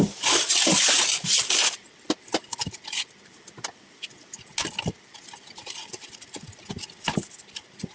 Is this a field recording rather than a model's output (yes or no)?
yes